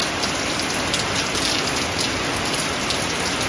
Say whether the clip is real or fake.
real